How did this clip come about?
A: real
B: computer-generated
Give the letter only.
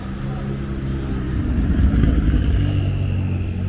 A